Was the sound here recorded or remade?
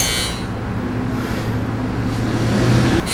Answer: recorded